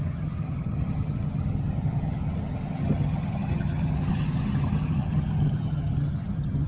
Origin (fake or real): fake